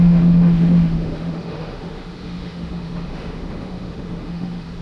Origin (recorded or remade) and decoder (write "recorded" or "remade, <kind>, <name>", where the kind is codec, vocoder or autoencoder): remade, autoencoder, DAC-VAE